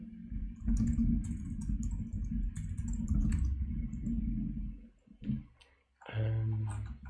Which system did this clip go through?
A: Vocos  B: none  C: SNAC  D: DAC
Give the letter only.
B